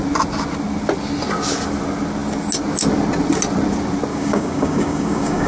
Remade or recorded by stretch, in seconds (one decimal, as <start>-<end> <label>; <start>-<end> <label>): 0.0-4.1 recorded; 4.1-5.5 remade